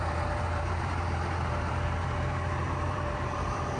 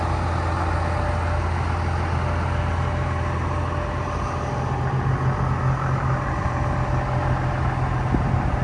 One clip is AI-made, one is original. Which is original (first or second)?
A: second